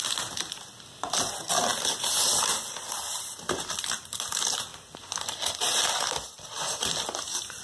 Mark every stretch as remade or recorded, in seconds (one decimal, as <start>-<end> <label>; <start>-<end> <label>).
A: 0.0-7.6 recorded

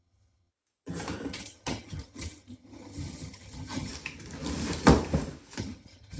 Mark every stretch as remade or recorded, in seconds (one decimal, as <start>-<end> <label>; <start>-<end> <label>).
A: 0.0-0.5 remade; 0.5-1.3 recorded; 1.3-3.9 remade; 3.9-5.6 recorded; 5.6-6.2 remade

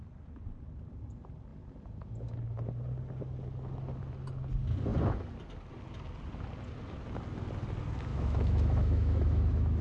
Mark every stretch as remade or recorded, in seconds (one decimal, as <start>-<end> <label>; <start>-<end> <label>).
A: 0.0-8.1 recorded; 8.1-9.8 remade